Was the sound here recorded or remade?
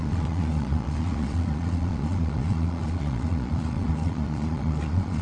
remade